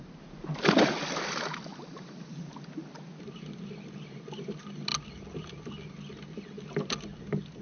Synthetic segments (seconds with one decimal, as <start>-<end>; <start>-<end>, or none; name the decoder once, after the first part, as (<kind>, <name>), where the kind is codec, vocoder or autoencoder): none